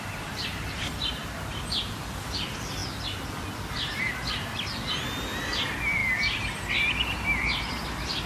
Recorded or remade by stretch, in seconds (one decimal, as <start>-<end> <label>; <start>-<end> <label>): 0.0-8.3 recorded